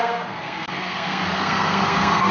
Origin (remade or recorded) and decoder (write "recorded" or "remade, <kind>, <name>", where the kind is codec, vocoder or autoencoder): remade, codec, SNAC